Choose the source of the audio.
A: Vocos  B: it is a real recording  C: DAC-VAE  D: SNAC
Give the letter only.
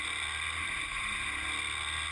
B